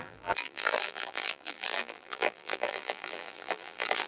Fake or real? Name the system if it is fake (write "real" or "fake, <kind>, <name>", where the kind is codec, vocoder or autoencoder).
fake, vocoder, BigVGAN v2